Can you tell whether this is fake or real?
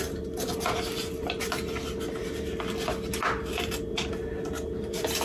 real